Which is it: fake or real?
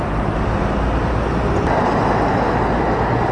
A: real